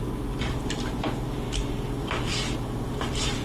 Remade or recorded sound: recorded